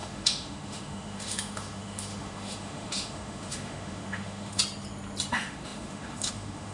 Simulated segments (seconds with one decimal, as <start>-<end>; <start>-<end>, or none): 0.0-4.6; 5.3-6.7

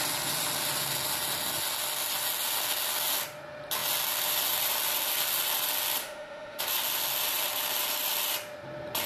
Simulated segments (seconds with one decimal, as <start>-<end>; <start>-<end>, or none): 6.0-6.6

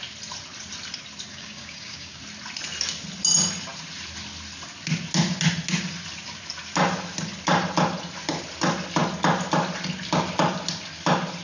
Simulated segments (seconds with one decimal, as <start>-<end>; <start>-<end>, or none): 1.3-2.2